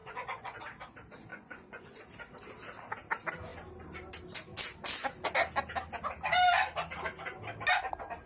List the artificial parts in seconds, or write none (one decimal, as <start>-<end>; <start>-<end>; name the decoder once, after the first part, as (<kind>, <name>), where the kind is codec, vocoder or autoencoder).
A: 0.0-0.6 (vocoder, Vocos); 1.3-2.0